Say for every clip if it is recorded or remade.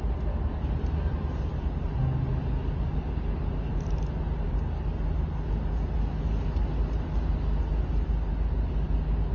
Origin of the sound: recorded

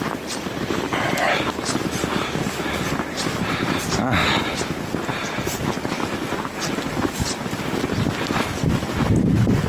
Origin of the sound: recorded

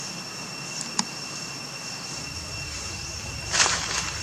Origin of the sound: recorded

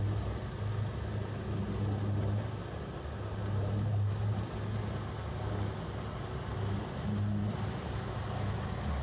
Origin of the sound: recorded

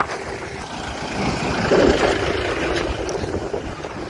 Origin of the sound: recorded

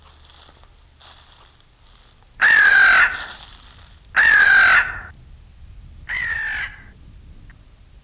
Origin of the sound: recorded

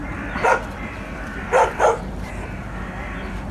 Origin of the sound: remade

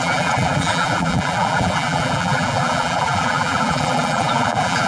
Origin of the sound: remade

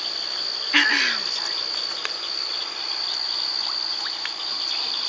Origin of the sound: recorded